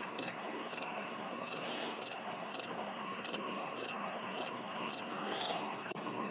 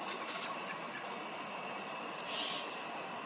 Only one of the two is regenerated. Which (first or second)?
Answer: first